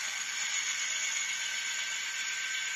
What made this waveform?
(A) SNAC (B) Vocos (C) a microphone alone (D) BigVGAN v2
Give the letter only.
C